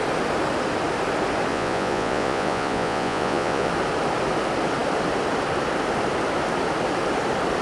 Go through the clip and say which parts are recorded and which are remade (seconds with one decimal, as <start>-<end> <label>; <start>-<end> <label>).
0.0-1.5 recorded; 1.5-3.7 remade; 3.7-7.6 recorded